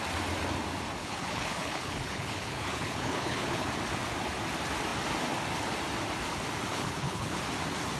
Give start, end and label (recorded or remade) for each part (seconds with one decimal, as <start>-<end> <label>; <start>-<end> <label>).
0.0-1.0 recorded; 1.0-3.7 remade; 3.7-6.7 recorded; 6.7-7.4 remade; 7.4-8.0 recorded